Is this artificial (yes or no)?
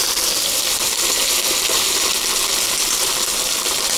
no